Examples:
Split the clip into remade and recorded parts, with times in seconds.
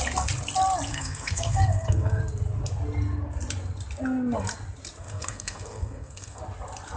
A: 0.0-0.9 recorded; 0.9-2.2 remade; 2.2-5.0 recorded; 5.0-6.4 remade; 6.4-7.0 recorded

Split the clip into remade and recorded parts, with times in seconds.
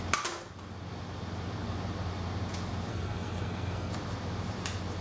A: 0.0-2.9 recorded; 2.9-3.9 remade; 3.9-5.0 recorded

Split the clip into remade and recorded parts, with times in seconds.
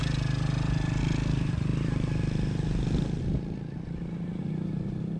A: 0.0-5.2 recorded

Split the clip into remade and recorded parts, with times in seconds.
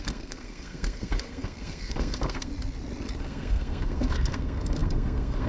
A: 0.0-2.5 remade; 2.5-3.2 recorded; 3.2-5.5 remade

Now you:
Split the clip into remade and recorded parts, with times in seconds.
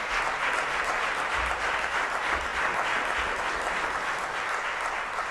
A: 0.0-5.3 recorded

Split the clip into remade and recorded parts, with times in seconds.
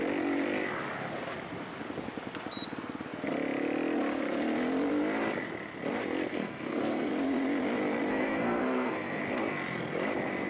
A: 0.0-6.3 recorded; 6.3-7.1 remade; 7.1-8.1 recorded; 8.1-9.2 remade; 9.2-10.5 recorded